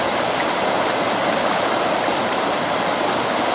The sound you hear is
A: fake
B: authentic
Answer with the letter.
B